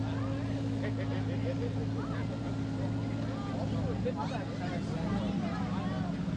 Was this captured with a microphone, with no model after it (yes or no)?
yes